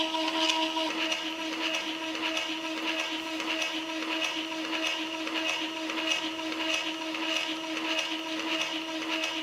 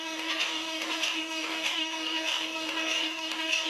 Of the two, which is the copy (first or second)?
second